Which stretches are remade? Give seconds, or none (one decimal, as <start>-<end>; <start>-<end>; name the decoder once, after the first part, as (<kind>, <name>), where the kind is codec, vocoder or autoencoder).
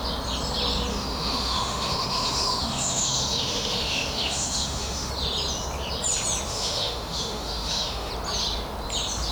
0.9-5.1 (autoencoder, DAC-VAE); 6.5-8.1